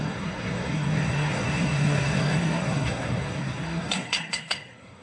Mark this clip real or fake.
fake